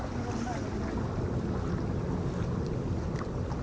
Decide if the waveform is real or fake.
real